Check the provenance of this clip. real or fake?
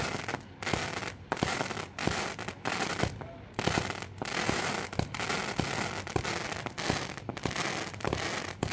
real